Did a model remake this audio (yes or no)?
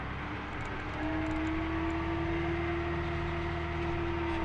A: no